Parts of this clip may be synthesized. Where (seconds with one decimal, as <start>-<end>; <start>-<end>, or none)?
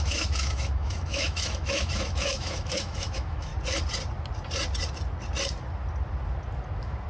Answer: 0.0-3.5